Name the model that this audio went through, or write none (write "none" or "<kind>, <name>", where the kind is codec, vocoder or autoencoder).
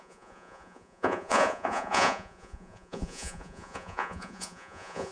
vocoder, Vocos